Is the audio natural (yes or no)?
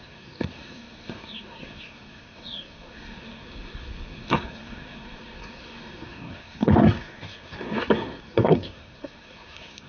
no